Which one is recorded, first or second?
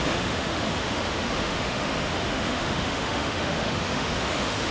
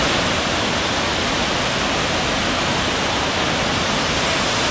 second